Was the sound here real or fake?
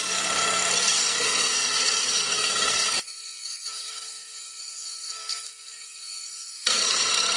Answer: fake